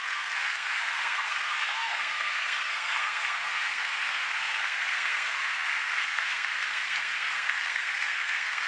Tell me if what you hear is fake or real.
fake